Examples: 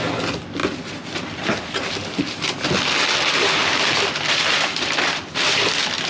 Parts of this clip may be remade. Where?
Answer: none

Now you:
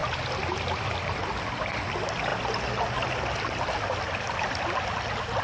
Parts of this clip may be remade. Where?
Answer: none

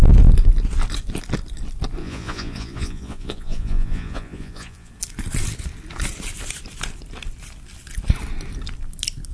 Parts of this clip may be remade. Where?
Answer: 2.0-4.9 (vocoder, Vocos)

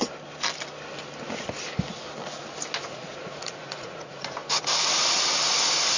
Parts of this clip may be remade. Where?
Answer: 2.8-4.4 (vocoder, Vocos)

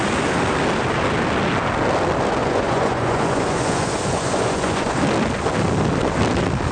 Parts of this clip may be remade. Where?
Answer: 2.4-4.9 (vocoder, Vocos)

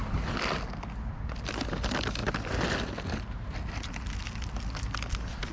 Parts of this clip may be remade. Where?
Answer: none

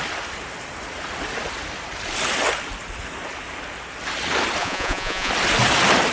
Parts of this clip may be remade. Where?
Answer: 4.6-5.3 (vocoder, Vocos)

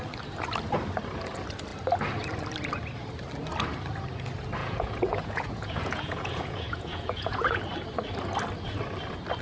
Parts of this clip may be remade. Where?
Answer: 4.6-7.6 (vocoder, Vocos)